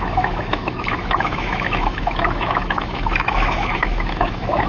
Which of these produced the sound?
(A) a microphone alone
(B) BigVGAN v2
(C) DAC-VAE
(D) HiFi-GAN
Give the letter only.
C